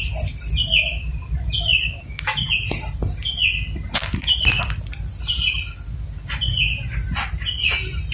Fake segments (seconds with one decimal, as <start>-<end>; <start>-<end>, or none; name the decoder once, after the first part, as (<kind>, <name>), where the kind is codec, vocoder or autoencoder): none

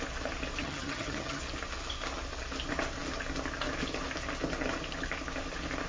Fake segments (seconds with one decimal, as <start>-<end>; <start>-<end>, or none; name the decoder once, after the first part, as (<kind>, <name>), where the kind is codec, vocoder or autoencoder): 0.6-1.4 (vocoder, HiFi-GAN)

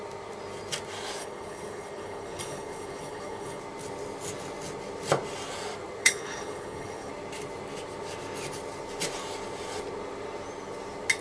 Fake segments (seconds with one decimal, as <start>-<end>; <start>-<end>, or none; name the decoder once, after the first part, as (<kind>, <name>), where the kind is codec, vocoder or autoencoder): 1.2-3.6 (codec, HILCodec); 6.0-7.1

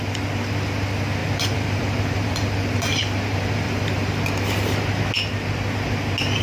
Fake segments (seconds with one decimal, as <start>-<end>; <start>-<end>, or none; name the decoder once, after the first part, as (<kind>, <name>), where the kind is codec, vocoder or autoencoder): 1.2-5.0 (vocoder, BigVGAN v2)

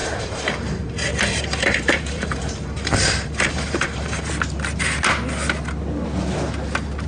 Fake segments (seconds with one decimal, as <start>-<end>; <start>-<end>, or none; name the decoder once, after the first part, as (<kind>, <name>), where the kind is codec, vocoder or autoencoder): 0.0-4.3 (vocoder, BigVGAN v2)

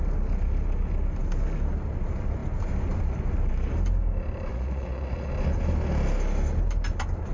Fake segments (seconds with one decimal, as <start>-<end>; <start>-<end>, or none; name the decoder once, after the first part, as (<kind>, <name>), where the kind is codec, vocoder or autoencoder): 4.5-5.3 (vocoder, Vocos)